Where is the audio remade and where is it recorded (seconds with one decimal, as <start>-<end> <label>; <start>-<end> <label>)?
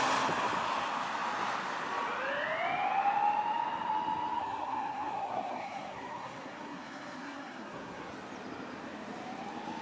0.0-4.4 recorded; 4.4-8.1 remade; 8.1-9.8 recorded